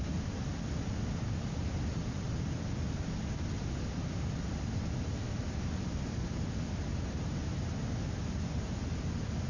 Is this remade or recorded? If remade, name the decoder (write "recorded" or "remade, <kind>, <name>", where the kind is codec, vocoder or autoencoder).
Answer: recorded